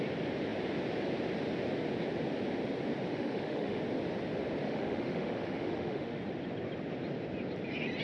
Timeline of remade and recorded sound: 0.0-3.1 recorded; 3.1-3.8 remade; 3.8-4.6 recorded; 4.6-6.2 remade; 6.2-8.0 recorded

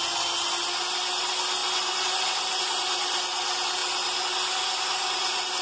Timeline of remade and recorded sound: 0.0-5.6 recorded

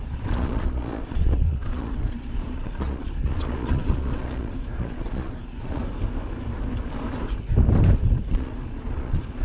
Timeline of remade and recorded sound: 0.0-5.8 remade; 5.8-8.3 recorded; 8.3-9.4 remade

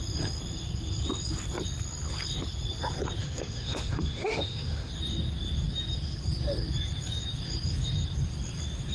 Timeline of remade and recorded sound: 0.0-3.2 recorded; 3.2-4.9 remade; 4.9-8.9 recorded

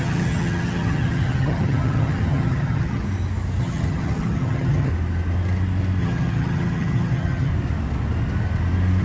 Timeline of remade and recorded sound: 0.0-3.0 remade; 3.0-3.6 recorded; 3.6-4.9 remade; 4.9-6.0 recorded; 6.0-7.5 remade; 7.5-9.0 recorded

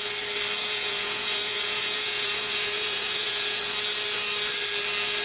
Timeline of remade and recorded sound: 0.0-0.6 recorded; 0.6-3.6 remade; 3.6-5.2 recorded